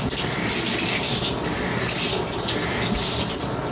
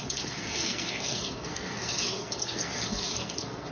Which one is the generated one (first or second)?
second